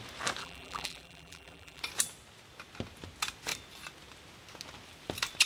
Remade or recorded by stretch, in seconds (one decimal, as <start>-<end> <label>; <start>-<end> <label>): 0.0-0.4 recorded; 0.4-1.8 remade; 1.8-5.5 recorded